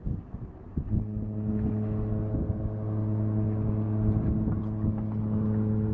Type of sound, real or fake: real